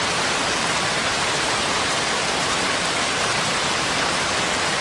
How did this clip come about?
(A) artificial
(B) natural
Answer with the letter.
A